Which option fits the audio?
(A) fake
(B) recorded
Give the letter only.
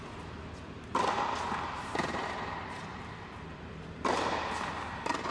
B